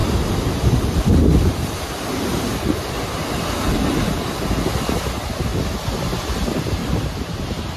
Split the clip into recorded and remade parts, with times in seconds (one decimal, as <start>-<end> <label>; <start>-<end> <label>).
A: 0.0-6.8 recorded; 6.8-7.8 remade